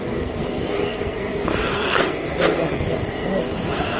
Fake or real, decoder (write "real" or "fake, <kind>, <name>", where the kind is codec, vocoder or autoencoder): fake, codec, SNAC